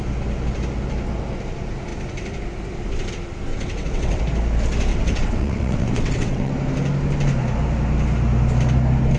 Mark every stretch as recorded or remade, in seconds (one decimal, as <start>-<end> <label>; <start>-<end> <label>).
0.0-3.5 recorded; 3.5-4.2 remade; 4.2-4.9 recorded; 4.9-6.5 remade; 6.5-9.2 recorded